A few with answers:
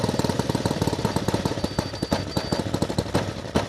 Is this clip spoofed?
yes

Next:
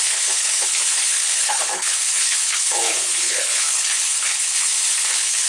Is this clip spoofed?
yes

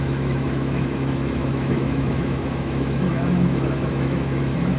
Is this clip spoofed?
yes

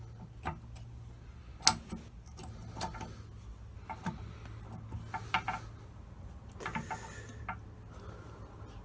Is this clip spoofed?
no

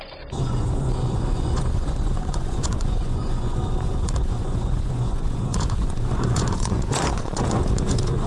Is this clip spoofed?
yes